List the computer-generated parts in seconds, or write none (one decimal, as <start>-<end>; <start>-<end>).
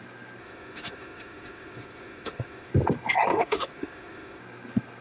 0.4-2.7; 3.3-4.4